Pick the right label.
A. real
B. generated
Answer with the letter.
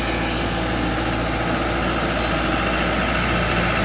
A